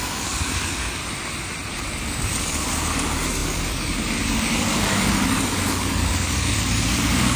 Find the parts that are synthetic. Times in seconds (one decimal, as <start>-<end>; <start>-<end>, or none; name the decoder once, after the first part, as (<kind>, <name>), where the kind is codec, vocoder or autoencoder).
0.0-1.0 (codec, DAC); 1.7-7.4

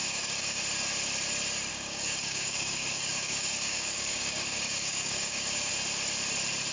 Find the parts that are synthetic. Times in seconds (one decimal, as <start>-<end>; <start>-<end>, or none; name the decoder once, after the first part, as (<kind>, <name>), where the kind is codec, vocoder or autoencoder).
0.0-0.6 (codec, DAC); 1.7-5.7